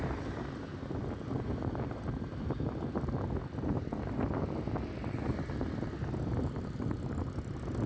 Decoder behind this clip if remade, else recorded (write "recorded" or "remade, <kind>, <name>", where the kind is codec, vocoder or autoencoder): recorded